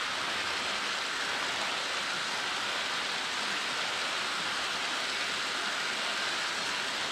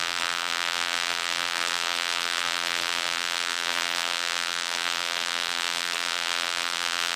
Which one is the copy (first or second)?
second